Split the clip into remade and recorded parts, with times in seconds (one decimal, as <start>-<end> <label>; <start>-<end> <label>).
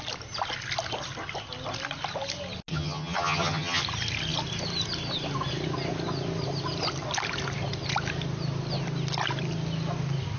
0.0-2.7 recorded; 2.7-3.8 remade; 3.8-10.4 recorded